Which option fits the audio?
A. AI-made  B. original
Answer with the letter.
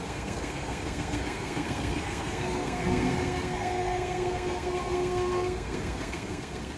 A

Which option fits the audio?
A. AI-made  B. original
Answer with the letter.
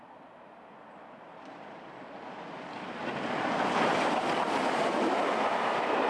B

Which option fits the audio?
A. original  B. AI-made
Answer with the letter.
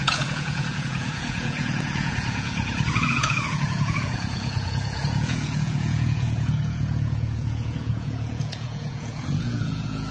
B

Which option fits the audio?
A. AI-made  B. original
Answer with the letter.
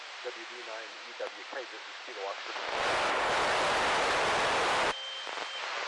B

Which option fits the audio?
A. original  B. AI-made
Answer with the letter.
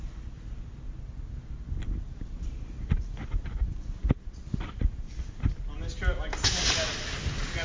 A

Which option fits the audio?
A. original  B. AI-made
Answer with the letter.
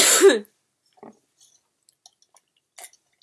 A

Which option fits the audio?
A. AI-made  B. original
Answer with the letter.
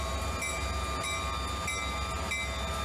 B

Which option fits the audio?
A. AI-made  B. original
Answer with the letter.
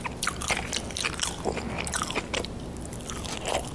B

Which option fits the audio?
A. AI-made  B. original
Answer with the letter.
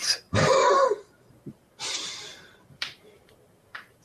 A